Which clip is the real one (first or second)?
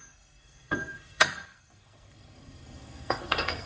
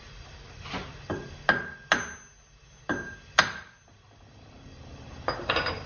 second